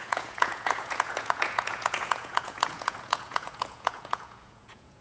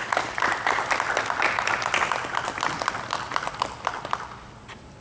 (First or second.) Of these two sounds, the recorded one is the second